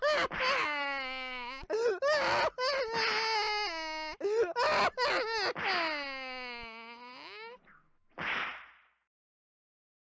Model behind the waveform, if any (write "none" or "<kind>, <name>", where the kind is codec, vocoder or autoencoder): none